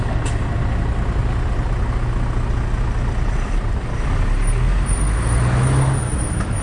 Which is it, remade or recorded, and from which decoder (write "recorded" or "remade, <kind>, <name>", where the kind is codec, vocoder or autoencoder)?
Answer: recorded